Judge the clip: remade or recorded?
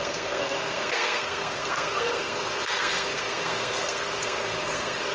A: remade